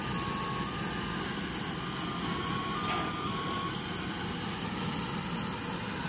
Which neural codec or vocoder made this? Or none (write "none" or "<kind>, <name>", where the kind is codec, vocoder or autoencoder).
none